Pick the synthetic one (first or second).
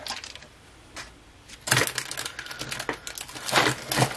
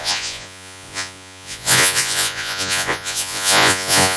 second